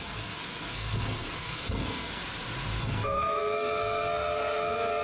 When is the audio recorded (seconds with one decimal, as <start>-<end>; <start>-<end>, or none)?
2.2-2.8